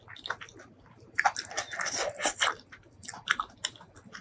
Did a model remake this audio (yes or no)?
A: no